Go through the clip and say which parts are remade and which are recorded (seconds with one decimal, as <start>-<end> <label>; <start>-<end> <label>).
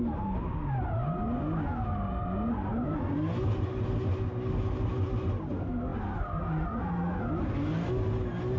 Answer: 0.0-8.6 recorded